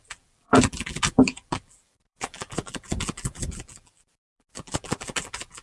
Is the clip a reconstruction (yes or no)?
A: yes